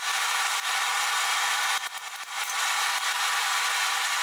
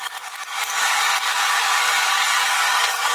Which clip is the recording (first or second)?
first